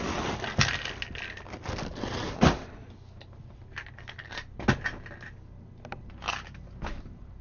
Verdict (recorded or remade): recorded